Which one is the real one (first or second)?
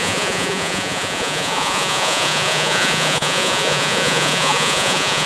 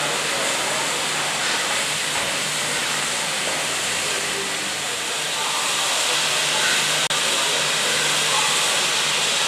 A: second